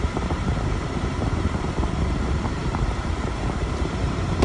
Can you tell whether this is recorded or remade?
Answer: remade